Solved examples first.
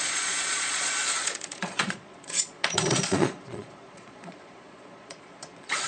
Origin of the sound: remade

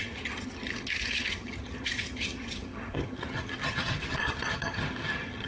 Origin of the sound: remade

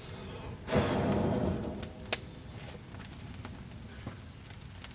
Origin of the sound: recorded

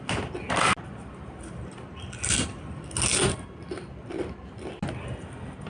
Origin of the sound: recorded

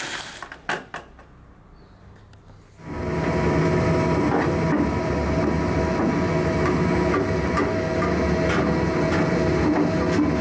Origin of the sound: recorded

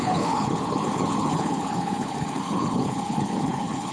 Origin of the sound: remade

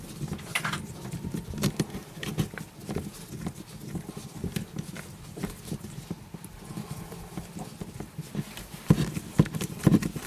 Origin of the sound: recorded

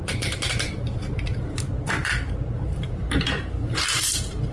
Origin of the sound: remade